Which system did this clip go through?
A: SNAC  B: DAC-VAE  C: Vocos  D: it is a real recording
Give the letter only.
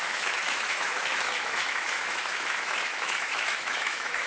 B